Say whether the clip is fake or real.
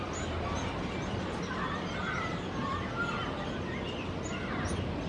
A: real